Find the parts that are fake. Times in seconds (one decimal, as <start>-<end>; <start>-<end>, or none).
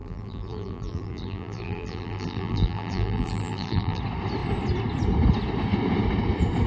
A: 0.0-4.0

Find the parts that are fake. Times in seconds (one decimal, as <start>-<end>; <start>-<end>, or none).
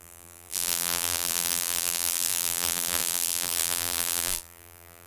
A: 0.0-5.1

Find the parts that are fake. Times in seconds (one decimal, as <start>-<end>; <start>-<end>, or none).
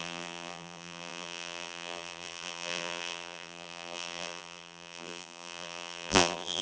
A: 0.0-6.6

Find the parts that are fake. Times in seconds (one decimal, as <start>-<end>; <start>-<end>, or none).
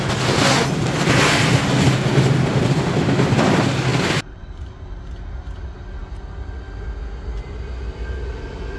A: 3.9-5.3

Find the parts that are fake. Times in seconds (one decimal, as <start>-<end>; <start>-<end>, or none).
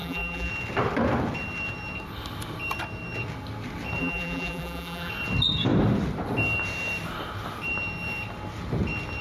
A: 0.0-0.5; 4.0-5.1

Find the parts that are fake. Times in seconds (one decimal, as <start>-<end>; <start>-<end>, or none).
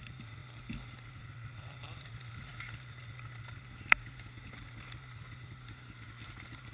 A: 0.0-0.4; 1.2-2.5